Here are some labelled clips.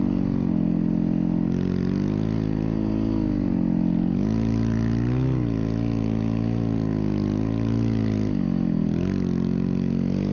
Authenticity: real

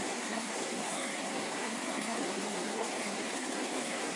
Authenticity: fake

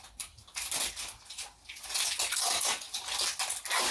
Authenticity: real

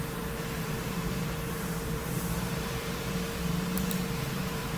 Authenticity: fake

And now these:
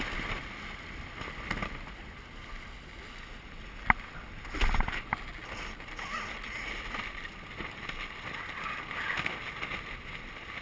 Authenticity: real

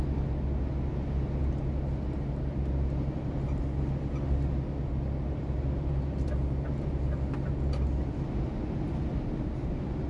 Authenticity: real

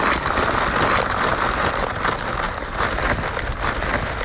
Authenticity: real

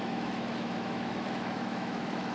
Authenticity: fake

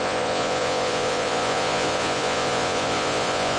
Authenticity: fake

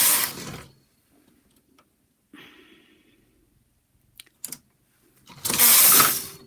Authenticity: real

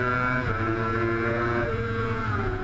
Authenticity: fake